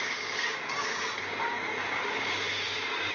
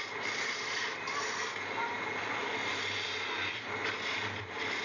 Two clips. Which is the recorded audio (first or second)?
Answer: second